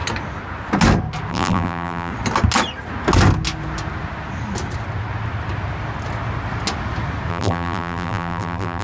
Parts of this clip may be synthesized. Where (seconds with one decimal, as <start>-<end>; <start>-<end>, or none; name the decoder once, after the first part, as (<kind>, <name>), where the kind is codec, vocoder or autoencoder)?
1.3-2.1 (vocoder, BigVGAN v2); 7.3-8.8